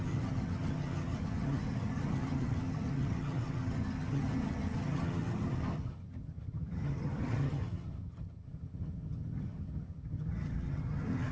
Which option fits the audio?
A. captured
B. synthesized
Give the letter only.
B